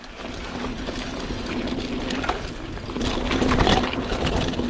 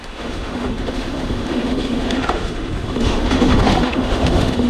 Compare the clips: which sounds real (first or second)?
first